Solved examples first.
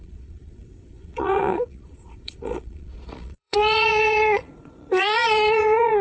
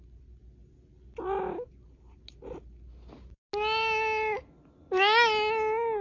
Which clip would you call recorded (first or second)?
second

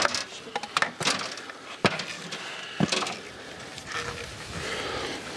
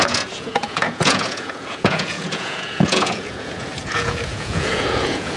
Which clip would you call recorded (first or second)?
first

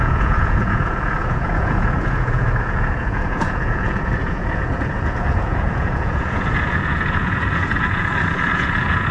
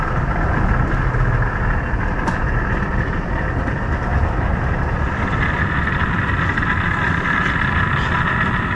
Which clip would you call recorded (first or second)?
second